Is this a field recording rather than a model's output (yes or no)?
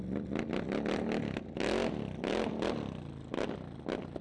yes